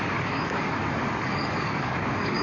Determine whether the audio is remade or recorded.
remade